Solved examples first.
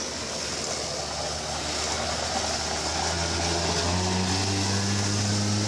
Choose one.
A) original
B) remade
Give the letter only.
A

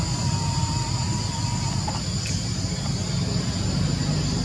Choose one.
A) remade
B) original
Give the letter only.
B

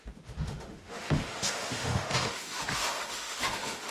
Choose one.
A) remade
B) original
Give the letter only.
A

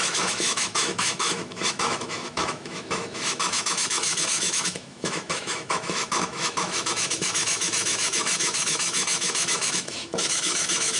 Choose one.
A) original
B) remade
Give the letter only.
B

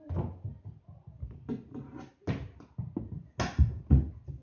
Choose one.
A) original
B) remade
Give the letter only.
A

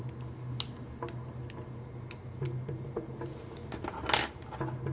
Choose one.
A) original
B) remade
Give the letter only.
A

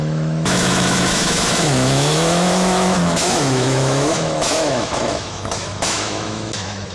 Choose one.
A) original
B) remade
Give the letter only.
B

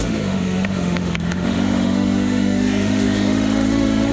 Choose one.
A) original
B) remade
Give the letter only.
B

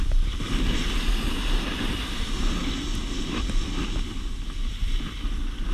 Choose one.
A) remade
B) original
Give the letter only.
B